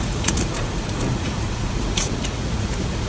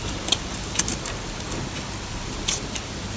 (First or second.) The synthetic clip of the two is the first